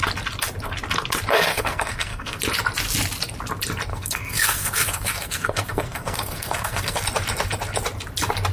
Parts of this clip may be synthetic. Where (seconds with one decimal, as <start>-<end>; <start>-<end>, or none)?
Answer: 1.5-2.4; 3.9-7.0